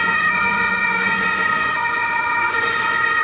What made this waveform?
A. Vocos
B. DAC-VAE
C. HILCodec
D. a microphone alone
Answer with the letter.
A